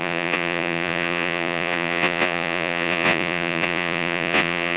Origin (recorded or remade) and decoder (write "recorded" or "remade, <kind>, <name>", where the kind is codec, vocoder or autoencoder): remade, vocoder, Vocos